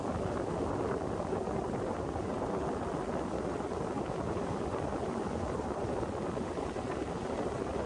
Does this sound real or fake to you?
real